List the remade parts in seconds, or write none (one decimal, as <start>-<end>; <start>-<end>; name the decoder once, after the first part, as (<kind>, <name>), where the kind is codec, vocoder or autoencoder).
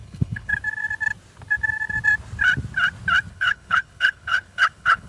0.0-0.5 (codec, HILCodec); 3.3-5.1